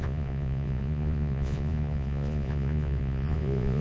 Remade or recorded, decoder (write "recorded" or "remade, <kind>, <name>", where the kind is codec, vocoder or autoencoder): remade, vocoder, Vocos